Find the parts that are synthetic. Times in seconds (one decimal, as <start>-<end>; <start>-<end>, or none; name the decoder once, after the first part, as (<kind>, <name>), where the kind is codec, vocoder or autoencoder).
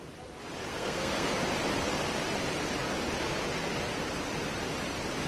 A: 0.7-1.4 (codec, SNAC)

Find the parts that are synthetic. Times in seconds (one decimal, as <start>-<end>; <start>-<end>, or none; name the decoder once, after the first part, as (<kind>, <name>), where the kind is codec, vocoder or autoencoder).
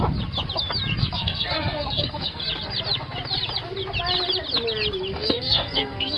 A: 1.0-2.4 (codec, SNAC); 5.1-6.2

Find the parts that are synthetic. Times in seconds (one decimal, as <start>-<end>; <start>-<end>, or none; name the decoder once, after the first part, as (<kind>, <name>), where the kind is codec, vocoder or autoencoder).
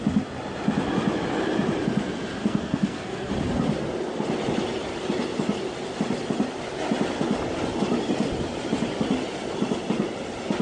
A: 2.4-3.3 (codec, SNAC)